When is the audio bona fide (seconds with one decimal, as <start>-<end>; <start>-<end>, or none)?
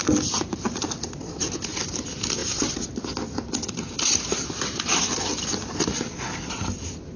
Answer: 0.0-7.2